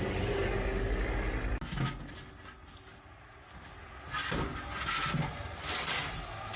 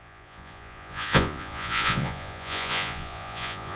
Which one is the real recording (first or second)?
first